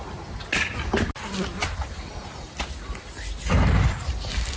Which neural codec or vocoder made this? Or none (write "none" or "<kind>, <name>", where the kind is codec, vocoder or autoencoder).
none